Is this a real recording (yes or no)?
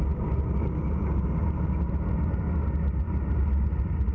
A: yes